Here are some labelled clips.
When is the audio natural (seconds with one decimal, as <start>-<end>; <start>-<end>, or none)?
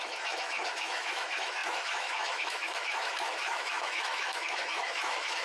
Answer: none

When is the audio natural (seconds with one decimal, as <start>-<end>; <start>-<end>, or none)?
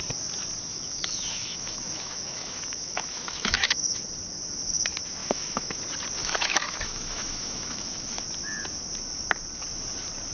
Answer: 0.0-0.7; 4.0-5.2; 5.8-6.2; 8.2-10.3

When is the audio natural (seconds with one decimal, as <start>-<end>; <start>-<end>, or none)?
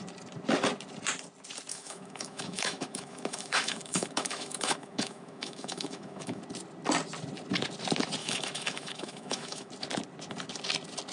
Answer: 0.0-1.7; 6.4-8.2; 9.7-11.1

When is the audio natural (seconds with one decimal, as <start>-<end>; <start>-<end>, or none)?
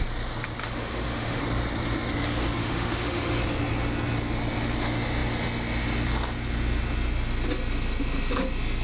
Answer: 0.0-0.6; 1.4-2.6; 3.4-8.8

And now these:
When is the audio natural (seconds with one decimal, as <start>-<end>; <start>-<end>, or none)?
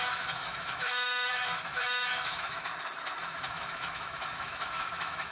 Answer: 2.7-3.2